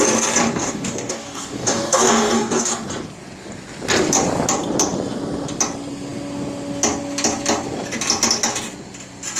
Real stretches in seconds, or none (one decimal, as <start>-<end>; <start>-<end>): 0.0-0.6; 2.7-9.4